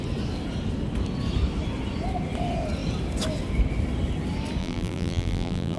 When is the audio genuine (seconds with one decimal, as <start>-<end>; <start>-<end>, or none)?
0.0-4.6